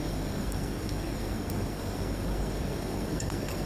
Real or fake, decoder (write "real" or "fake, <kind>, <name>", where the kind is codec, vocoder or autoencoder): fake, codec, SNAC